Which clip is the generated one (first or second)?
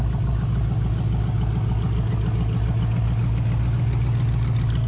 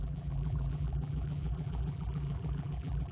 second